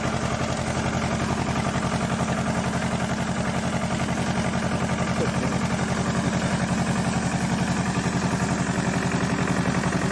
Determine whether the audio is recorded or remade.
recorded